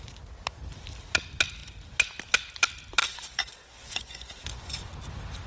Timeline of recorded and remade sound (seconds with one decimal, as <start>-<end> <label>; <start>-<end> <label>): 0.0-3.0 recorded; 3.0-4.9 remade; 4.9-5.5 recorded

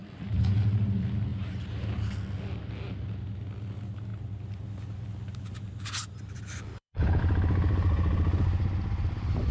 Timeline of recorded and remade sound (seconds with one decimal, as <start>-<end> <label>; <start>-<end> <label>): 0.0-6.7 recorded; 6.7-7.2 remade; 7.2-9.5 recorded

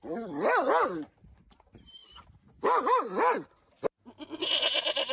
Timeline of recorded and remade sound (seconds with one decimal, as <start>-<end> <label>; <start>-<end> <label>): 0.0-5.1 recorded

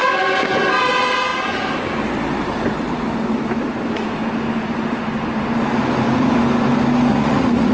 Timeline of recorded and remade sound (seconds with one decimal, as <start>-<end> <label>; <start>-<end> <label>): 0.0-7.1 recorded; 7.1-7.7 remade

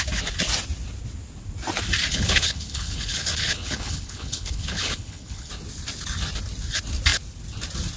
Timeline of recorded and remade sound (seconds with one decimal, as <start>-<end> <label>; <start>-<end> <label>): 0.0-2.1 recorded; 2.1-5.5 remade; 5.5-8.0 recorded

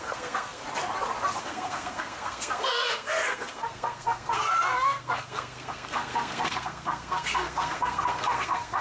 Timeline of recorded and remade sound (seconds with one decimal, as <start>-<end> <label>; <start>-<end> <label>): 0.0-0.6 remade; 0.6-1.4 recorded; 1.4-8.8 remade

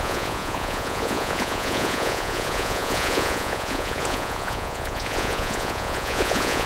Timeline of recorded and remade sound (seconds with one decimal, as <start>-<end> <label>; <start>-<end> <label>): 0.0-6.7 remade

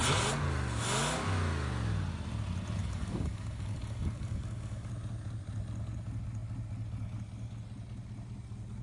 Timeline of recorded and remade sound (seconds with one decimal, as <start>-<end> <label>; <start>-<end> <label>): 0.0-2.8 recorded; 2.8-4.9 remade; 4.9-8.8 recorded